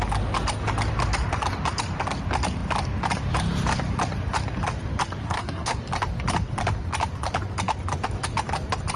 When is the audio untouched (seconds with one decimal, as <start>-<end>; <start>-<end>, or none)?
0.0-5.2; 5.8-9.0